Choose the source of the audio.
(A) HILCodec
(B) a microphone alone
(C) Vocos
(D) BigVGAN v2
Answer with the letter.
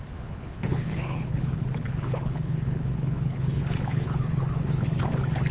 A